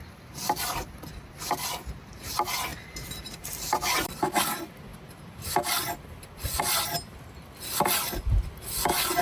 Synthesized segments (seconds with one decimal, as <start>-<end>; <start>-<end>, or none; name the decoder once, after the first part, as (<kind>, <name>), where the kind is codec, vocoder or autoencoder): 2.7-4.1 (vocoder, BigVGAN v2)

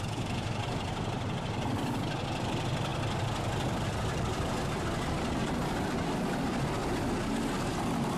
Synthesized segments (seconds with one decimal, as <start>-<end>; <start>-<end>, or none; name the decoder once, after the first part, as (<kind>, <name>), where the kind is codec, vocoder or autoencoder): 0.0-6.8 (vocoder, BigVGAN v2)

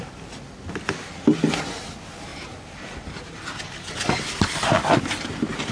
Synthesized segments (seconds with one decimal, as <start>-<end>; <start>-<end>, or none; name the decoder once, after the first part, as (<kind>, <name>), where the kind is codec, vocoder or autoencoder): none

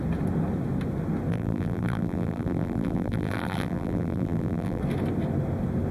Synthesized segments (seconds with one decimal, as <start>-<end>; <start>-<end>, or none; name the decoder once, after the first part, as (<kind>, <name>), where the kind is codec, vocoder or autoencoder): 1.3-4.8 (vocoder, BigVGAN v2)

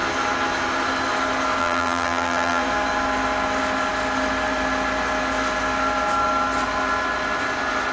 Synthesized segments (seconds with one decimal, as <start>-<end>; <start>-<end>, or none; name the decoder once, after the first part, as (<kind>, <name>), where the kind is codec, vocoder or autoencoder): 1.6-2.6 (vocoder, BigVGAN v2)

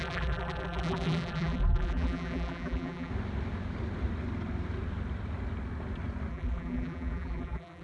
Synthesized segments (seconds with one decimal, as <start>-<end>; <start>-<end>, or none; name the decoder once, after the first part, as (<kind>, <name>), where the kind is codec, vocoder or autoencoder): 0.0-3.1 (vocoder, BigVGAN v2); 6.3-7.8

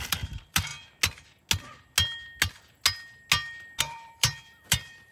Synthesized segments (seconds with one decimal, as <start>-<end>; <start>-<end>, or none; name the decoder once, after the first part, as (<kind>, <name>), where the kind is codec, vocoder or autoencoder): 0.0-0.7 (vocoder, BigVGAN v2); 3.8-5.1